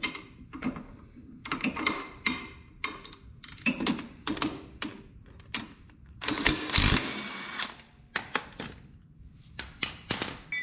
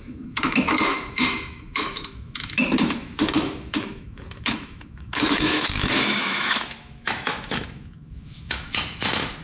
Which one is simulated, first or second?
second